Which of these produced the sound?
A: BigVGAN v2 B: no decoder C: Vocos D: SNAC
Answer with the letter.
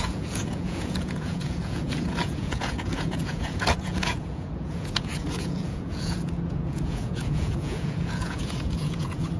C